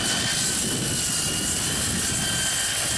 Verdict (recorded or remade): recorded